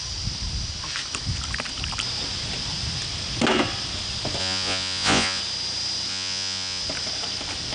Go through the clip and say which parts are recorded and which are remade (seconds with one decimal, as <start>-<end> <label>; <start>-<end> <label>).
0.0-4.4 recorded; 4.4-5.4 remade; 5.4-6.1 recorded; 6.1-6.8 remade; 6.8-7.7 recorded

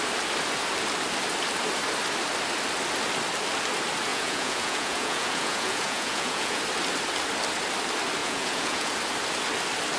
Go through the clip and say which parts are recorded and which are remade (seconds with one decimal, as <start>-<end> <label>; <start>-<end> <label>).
0.0-4.1 recorded; 4.1-6.6 remade; 6.6-8.2 recorded; 8.2-8.9 remade; 8.9-10.0 recorded

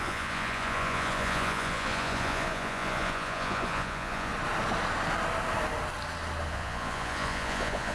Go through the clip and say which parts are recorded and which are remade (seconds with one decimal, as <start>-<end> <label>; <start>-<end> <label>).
0.0-4.3 remade; 4.3-6.5 recorded; 6.5-7.9 remade

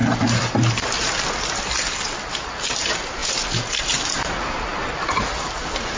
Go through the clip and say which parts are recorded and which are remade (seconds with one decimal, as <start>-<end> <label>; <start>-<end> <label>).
0.0-6.0 recorded

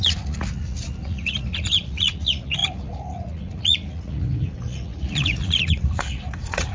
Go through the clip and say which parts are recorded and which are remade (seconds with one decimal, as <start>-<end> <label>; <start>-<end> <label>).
0.0-6.7 remade

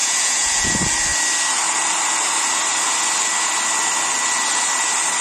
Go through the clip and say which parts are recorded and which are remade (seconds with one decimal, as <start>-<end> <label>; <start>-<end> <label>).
0.0-0.7 remade; 0.7-5.2 recorded